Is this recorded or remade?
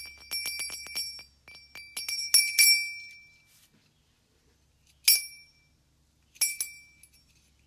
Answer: recorded